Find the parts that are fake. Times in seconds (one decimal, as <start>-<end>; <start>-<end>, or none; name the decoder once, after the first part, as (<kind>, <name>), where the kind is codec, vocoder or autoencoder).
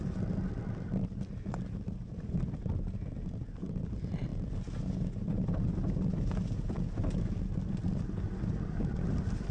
none